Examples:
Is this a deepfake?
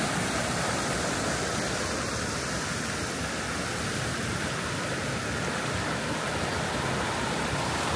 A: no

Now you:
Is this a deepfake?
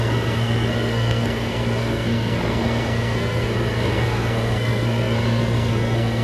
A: yes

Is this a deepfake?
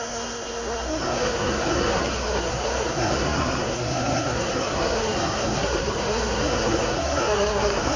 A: yes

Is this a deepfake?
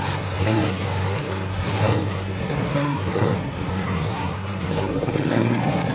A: yes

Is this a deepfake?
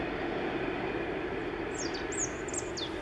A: no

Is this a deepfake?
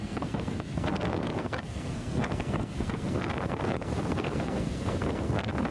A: yes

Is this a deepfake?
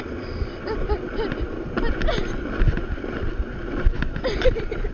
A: no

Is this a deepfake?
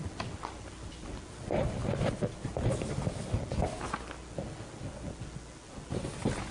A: no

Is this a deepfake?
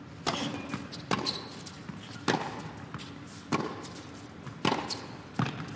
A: no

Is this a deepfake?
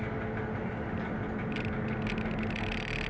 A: no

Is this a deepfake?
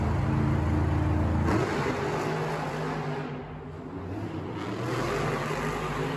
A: no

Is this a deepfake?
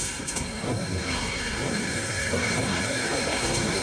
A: yes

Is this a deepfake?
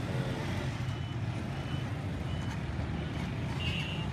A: no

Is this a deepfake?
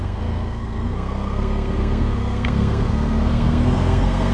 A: yes